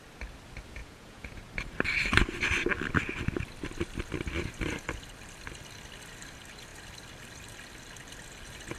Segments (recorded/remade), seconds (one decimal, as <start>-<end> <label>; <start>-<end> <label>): 0.0-0.8 recorded; 0.8-1.5 remade; 1.5-8.8 recorded